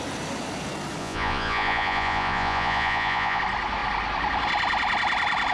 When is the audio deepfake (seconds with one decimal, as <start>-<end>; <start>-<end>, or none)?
1.0-3.4